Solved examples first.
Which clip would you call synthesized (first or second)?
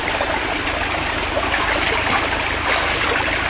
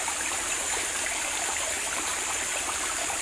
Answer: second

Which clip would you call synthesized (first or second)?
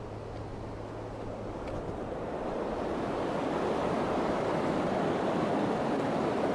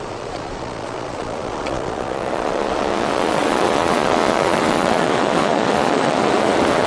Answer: second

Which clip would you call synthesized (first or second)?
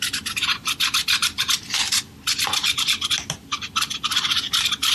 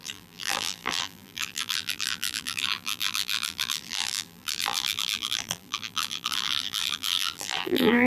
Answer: second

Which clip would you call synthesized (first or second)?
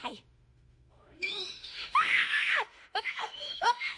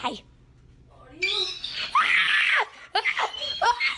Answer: first